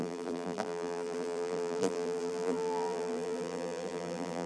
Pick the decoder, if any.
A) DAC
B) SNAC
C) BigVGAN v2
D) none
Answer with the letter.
C